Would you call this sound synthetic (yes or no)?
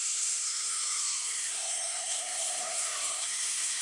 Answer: yes